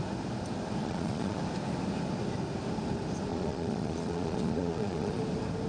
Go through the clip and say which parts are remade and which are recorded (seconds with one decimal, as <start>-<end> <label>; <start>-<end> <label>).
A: 0.0-0.8 recorded; 0.8-1.4 remade; 1.4-3.3 recorded; 3.3-5.2 remade; 5.2-5.7 recorded